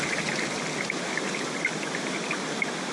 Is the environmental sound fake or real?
real